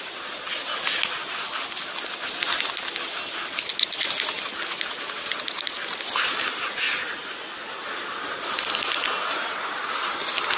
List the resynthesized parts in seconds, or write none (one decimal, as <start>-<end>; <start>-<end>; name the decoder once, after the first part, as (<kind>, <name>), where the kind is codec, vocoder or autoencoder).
none